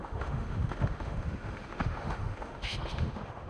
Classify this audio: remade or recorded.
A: remade